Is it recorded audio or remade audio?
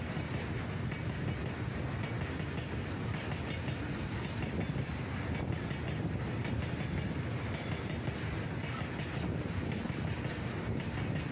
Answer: recorded